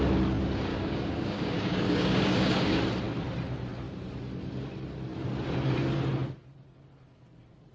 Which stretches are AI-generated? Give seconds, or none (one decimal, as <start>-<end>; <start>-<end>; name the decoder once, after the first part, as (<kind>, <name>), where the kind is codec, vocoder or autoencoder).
0.7-2.8 (codec, DAC)